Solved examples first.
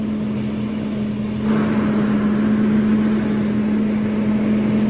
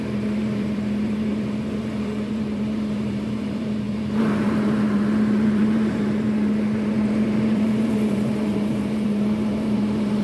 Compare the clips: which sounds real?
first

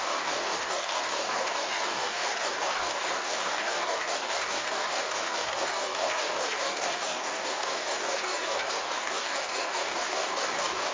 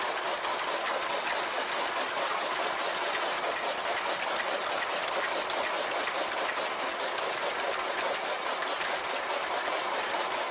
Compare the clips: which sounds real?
second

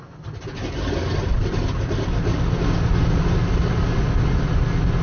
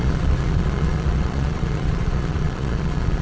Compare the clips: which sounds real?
first